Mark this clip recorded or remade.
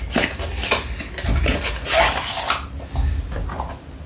recorded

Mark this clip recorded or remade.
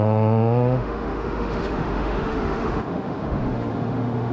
remade